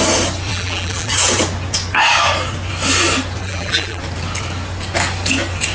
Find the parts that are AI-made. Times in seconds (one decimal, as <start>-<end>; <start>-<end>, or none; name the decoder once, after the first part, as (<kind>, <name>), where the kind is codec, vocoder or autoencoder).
0.5-1.1 (vocoder, BigVGAN v2); 3.4-4.0